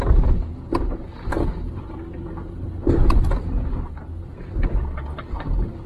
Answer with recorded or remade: recorded